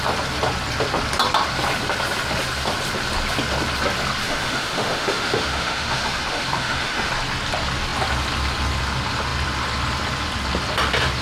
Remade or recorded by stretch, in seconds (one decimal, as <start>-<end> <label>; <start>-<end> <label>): 0.0-4.2 recorded; 4.2-7.1 remade; 7.1-11.2 recorded